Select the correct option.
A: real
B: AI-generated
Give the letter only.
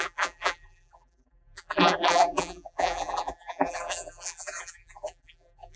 B